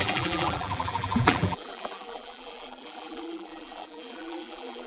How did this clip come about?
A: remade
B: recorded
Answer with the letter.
A